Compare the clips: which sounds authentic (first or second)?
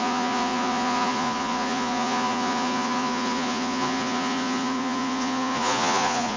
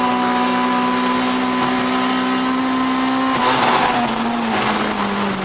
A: second